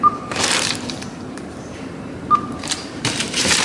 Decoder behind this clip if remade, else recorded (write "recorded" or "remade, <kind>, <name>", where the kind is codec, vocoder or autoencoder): remade, vocoder, BigVGAN v2